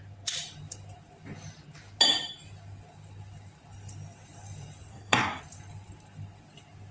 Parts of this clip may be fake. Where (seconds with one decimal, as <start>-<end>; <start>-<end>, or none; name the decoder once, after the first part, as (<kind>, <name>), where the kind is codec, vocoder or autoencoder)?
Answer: 4.9-5.4 (codec, SNAC)